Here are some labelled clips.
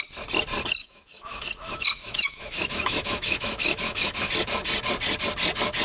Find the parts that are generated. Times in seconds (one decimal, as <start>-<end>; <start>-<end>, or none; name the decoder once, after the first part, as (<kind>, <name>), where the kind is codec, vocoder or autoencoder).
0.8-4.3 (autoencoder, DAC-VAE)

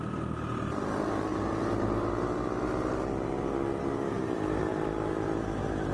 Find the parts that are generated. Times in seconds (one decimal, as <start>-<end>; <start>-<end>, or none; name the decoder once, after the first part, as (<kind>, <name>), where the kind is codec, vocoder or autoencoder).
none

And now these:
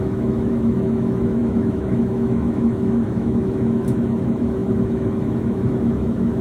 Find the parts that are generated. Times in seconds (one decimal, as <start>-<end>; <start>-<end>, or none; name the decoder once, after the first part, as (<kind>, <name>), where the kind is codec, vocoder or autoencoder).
0.0-6.4 (autoencoder, DAC-VAE)